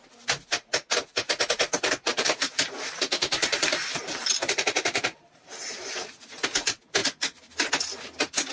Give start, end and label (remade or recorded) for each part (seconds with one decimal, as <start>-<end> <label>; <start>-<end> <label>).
0.0-2.1 recorded; 2.1-6.3 remade; 6.3-8.5 recorded

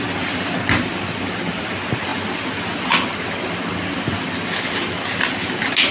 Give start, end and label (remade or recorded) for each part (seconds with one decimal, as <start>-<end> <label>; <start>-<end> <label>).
0.0-5.9 recorded

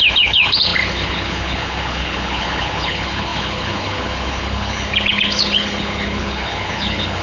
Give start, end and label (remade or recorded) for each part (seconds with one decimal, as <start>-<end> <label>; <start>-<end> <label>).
0.0-7.2 remade

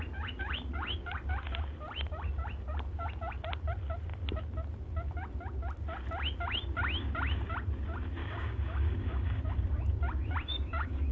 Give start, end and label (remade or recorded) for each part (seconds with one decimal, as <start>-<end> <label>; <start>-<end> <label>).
0.0-8.2 recorded; 8.2-9.4 remade; 9.4-10.5 recorded; 10.5-11.1 remade